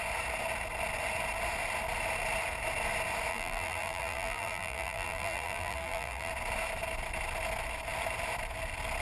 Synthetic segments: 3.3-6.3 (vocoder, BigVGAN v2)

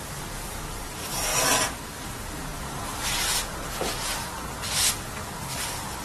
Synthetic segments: 0.0-1.3 (vocoder, BigVGAN v2); 1.9-2.5